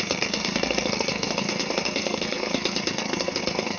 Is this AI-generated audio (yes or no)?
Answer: yes